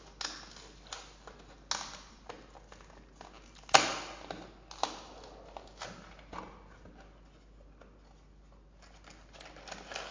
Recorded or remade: recorded